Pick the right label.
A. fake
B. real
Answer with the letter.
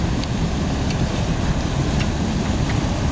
B